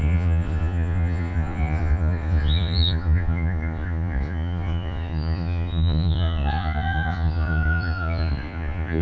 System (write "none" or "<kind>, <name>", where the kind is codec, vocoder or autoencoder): vocoder, Vocos